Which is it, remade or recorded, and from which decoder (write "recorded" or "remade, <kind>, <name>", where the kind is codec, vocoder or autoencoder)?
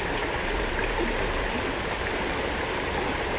recorded